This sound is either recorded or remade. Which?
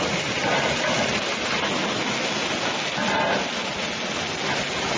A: recorded